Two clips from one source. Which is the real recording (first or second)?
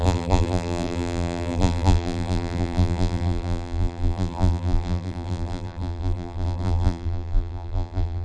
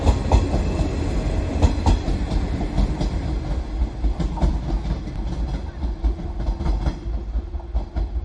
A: second